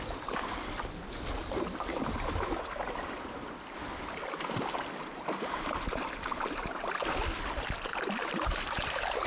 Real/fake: real